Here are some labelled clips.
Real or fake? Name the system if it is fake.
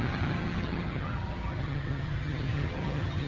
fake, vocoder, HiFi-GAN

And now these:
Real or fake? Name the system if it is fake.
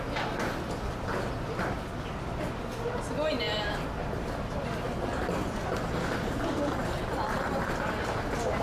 real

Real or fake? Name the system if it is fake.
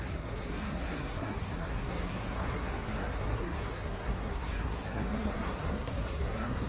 fake, codec, SNAC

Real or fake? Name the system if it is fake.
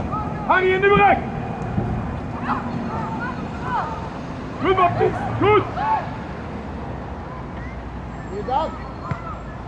real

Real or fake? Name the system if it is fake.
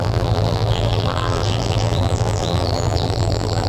fake, vocoder, BigVGAN v2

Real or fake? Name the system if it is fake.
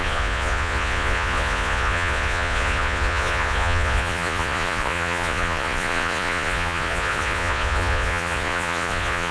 fake, vocoder, Vocos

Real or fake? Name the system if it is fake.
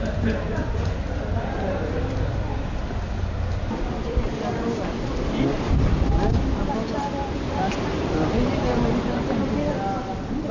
real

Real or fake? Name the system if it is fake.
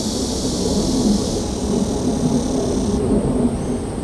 real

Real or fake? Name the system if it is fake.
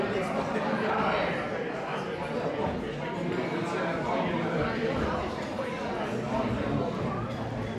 fake, vocoder, BigVGAN v2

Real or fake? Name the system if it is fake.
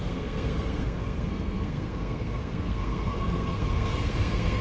fake, codec, SNAC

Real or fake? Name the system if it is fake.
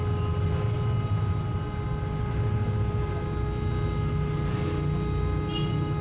real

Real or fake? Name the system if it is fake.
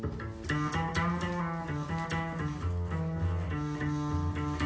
real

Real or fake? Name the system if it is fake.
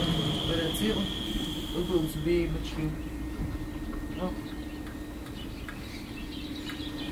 real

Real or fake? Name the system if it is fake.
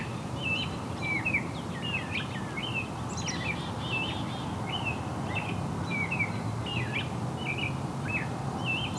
real